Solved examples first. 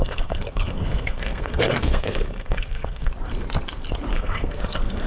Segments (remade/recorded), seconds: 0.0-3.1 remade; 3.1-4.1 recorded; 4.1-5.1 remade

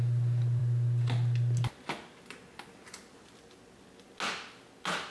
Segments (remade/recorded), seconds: 0.0-5.1 recorded

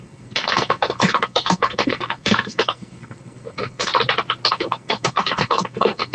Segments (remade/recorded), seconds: 0.0-3.9 remade; 3.9-4.5 recorded; 4.5-6.1 remade

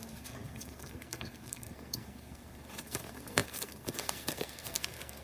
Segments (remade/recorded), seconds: 0.0-5.2 remade

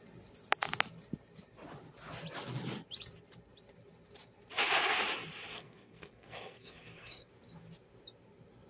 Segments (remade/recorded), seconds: 0.0-5.5 recorded; 5.5-7.3 remade; 7.3-8.7 recorded

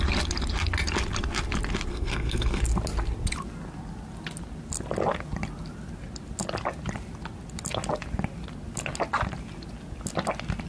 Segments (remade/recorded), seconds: 0.0-1.9 recorded; 1.9-2.6 remade; 2.6-10.7 recorded

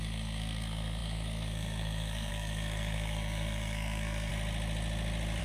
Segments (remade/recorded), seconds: 0.0-4.3 remade; 4.3-5.4 recorded

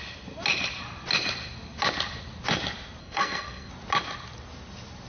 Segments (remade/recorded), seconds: 0.0-3.0 recorded; 3.0-3.7 remade; 3.7-5.1 recorded